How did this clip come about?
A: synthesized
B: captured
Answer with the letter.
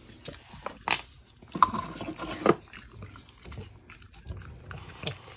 B